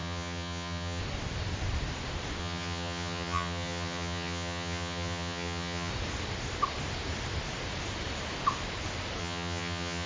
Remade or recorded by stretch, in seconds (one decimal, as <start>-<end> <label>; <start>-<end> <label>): 0.0-1.0 remade; 1.0-2.4 recorded; 2.4-5.9 remade; 5.9-9.2 recorded; 9.2-10.1 remade